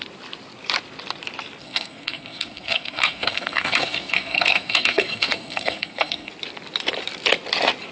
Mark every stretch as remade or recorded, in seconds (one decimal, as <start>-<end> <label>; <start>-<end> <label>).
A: 0.0-1.6 recorded; 1.6-6.3 remade; 6.3-7.9 recorded